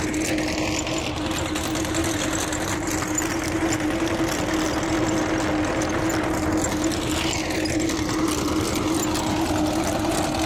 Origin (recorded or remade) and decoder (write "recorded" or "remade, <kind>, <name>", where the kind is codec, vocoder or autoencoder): recorded